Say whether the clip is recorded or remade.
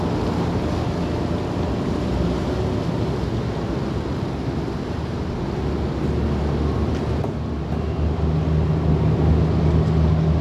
recorded